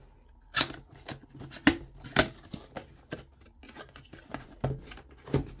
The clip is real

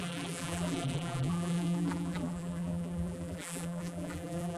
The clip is fake